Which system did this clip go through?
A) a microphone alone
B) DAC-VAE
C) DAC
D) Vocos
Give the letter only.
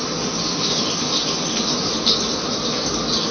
A